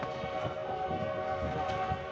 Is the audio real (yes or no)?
no